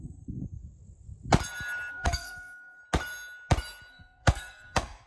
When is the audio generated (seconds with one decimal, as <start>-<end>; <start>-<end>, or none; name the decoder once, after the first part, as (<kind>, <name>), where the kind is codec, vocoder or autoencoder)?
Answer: 0.0-0.6 (codec, SNAC); 1.9-2.8; 3.9-5.1